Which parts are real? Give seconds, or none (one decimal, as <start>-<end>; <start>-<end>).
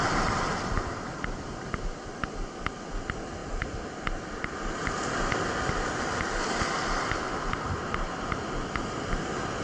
0.0-9.6